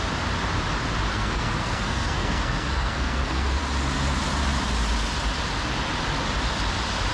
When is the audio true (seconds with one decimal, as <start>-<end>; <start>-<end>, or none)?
0.0-1.1; 3.6-7.1